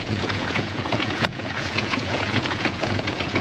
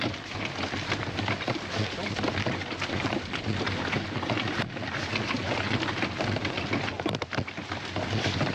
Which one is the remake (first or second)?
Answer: first